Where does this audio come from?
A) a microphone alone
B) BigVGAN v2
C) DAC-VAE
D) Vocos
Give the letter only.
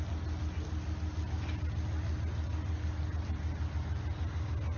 A